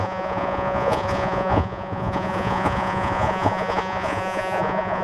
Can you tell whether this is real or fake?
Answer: fake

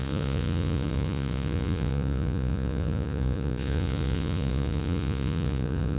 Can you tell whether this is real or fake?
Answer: fake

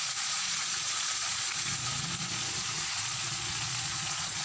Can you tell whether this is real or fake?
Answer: fake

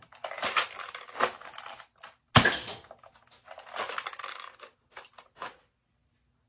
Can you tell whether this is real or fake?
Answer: real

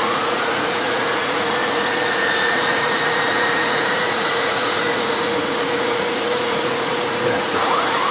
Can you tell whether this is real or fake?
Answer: fake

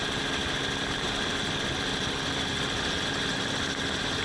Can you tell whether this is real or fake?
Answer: real